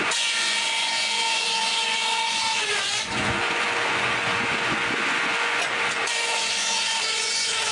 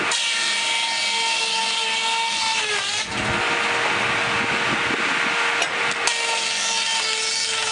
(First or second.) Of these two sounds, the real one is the second